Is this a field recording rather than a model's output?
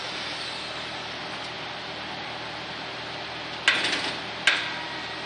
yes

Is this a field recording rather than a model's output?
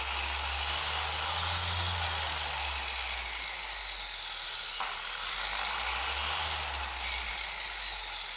yes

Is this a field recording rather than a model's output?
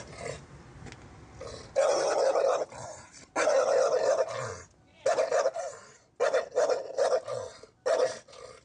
yes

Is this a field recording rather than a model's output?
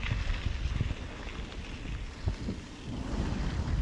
yes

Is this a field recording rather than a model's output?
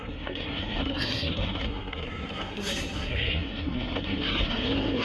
no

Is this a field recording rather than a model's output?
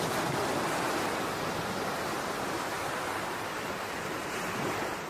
yes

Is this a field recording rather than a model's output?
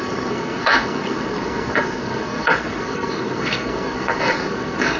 no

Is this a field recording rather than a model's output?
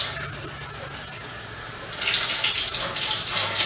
yes